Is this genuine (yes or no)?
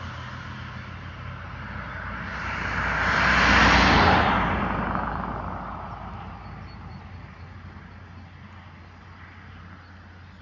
yes